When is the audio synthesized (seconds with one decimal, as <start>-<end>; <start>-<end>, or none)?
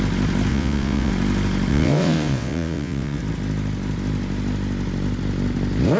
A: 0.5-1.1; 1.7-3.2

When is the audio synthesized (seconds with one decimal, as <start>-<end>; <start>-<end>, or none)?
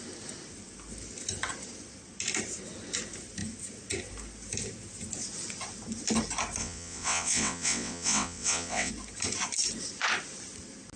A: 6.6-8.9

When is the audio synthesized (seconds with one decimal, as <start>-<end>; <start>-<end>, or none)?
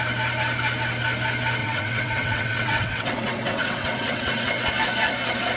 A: 1.6-4.7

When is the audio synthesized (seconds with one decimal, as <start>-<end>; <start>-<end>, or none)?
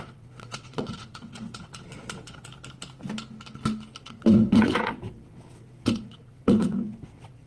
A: 0.0-2.5; 4.0-7.5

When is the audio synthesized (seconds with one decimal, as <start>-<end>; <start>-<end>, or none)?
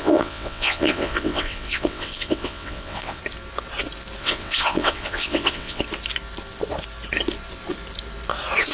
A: 0.0-3.2; 4.2-5.8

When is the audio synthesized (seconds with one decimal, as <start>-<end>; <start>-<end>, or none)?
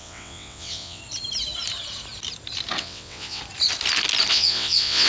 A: 0.0-1.0; 2.8-3.4; 4.3-5.1